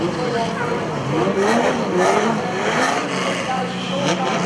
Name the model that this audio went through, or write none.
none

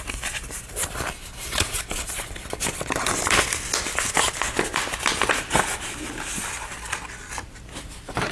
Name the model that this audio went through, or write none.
none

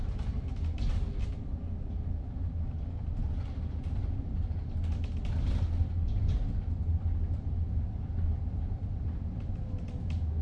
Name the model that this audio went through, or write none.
none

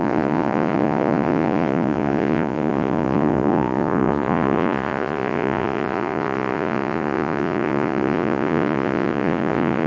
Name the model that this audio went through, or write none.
vocoder, Vocos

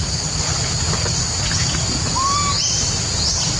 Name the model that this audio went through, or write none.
none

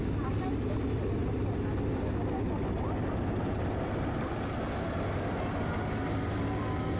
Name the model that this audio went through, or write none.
none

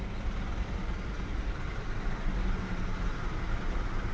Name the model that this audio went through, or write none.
none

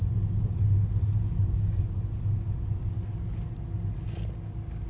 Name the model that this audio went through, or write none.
none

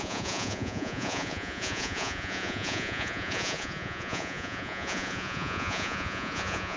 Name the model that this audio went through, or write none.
vocoder, Vocos